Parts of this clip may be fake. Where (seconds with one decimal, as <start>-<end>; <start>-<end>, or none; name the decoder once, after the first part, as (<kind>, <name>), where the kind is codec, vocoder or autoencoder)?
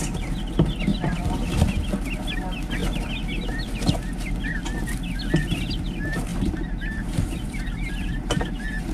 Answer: 0.9-1.6 (vocoder, BigVGAN v2); 6.3-8.0